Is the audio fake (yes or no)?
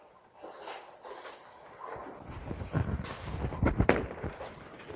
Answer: no